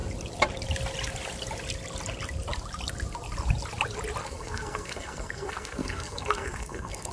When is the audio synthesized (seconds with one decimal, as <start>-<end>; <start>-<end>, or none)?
4.2-7.1